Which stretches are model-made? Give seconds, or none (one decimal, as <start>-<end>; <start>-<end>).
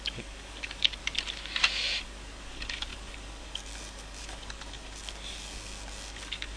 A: 0.0-1.0; 2.0-6.6